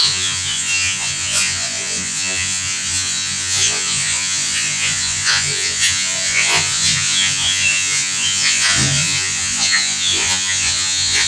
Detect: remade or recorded remade